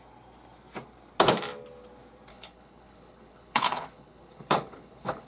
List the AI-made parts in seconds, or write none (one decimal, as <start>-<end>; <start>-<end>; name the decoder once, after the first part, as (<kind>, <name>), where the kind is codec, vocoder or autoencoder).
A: 2.3-5.3 (codec, HILCodec)